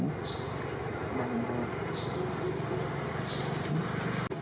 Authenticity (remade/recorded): recorded